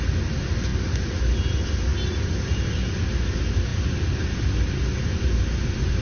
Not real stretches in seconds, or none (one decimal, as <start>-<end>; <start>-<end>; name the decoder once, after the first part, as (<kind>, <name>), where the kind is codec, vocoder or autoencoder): none